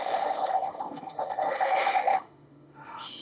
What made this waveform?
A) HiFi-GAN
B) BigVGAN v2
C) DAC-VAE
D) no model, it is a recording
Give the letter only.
C